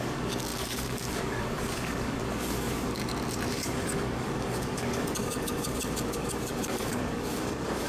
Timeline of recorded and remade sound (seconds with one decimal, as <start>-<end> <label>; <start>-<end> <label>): 0.0-3.0 remade; 3.0-3.5 recorded; 3.5-7.9 remade